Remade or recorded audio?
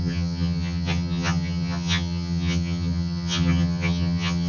remade